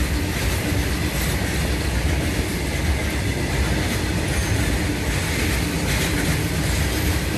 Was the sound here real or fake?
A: real